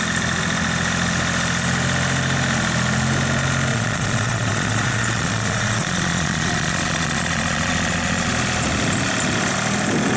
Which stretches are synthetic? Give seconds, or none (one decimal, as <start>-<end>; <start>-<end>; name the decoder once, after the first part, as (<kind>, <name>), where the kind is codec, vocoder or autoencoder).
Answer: 3.7-8.3 (vocoder, Vocos)

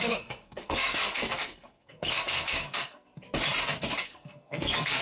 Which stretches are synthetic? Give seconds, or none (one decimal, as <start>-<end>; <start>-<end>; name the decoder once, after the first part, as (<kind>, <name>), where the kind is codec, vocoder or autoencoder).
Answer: 0.0-3.1 (codec, SNAC); 4.0-5.0

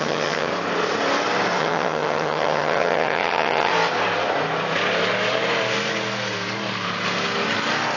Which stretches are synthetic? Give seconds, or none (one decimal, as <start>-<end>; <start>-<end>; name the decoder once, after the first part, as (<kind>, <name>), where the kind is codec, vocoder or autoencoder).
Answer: 0.0-0.5 (vocoder, HiFi-GAN); 1.6-3.7

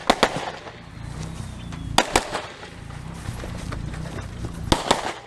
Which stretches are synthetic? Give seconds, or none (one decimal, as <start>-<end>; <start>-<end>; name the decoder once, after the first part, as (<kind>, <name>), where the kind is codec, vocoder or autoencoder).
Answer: 2.3-4.7 (vocoder, BigVGAN v2)

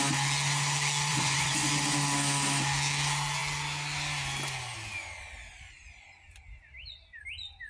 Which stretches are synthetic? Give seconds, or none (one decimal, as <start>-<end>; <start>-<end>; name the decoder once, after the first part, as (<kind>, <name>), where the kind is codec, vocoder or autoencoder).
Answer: 1.1-1.7 (vocoder, Vocos)

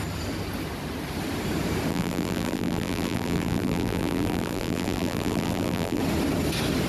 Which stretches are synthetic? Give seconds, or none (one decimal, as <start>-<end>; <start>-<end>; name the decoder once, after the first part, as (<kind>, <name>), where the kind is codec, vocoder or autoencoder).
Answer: 1.9-6.0 (vocoder, BigVGAN v2)

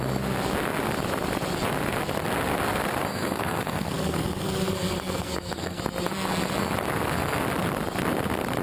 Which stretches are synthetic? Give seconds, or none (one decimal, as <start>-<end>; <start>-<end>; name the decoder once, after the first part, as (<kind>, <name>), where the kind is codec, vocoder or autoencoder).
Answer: 3.1-5.8 (codec, SNAC)

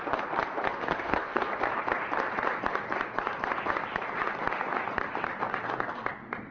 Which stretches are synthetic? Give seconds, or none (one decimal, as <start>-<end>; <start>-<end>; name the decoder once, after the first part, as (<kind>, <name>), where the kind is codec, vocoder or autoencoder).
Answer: 0.7-1.6 (codec, SNAC)